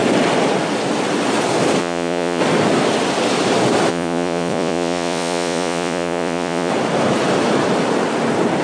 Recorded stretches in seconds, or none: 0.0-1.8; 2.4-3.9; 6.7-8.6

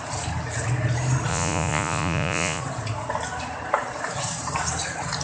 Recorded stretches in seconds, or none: 0.0-1.3; 2.6-5.2